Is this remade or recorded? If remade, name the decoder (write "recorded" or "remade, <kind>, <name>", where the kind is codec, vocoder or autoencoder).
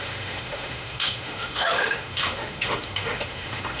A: remade, autoencoder, DAC-VAE